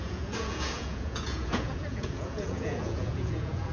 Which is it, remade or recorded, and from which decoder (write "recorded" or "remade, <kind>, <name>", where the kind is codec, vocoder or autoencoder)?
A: remade, vocoder, Vocos